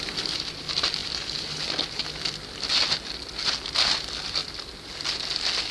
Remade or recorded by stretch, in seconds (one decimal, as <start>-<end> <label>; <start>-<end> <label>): 0.0-5.7 recorded